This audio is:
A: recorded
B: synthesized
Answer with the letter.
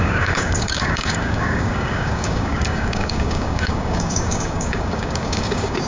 B